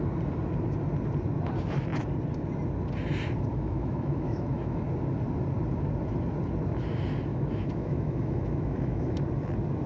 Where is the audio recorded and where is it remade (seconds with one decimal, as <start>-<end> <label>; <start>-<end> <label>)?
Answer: 0.0-3.5 recorded; 3.5-4.8 remade; 4.8-7.3 recorded; 7.3-9.2 remade; 9.2-9.9 recorded